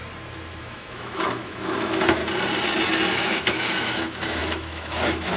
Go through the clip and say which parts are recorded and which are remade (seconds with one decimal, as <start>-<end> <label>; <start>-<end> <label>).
0.0-0.6 recorded; 0.6-2.2 remade; 2.2-3.1 recorded; 3.1-5.4 remade